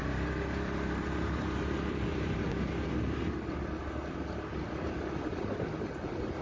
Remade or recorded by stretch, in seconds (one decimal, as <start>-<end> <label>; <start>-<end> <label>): 0.0-2.4 remade; 2.4-6.4 recorded